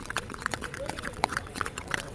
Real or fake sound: fake